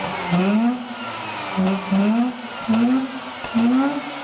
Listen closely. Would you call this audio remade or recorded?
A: recorded